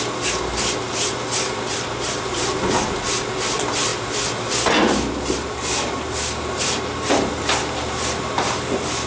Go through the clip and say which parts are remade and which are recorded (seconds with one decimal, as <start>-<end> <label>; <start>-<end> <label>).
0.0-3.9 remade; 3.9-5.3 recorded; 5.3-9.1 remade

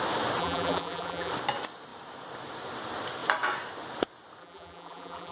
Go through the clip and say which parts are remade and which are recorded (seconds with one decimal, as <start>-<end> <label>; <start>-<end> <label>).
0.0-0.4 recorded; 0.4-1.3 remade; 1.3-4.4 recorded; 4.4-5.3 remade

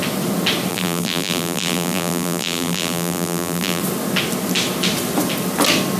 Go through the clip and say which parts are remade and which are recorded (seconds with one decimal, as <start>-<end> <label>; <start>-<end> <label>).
0.0-0.7 recorded; 0.7-3.8 remade; 3.8-6.0 recorded